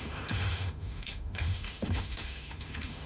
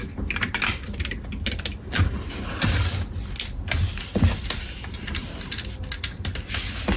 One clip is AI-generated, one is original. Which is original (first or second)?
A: second